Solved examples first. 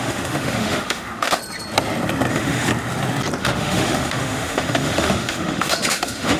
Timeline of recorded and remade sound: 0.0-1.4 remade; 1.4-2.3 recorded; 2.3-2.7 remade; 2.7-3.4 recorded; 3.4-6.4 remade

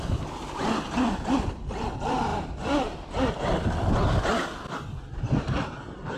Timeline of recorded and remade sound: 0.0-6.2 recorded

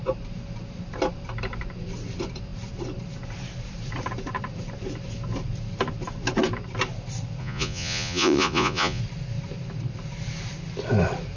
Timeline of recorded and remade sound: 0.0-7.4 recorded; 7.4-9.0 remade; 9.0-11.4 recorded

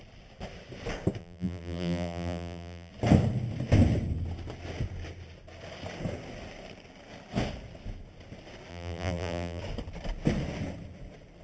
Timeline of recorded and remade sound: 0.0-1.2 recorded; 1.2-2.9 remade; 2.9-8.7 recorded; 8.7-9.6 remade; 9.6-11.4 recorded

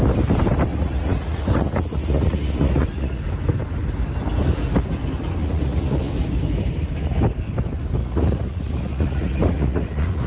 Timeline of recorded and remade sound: 0.0-0.7 recorded; 0.7-3.2 remade; 3.2-5.4 recorded; 5.4-6.1 remade; 6.1-8.0 recorded; 8.0-10.3 remade